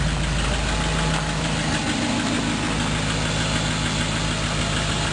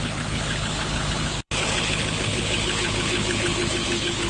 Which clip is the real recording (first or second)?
first